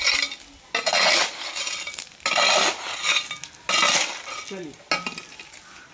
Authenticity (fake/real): real